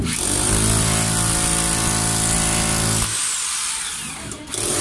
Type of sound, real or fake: real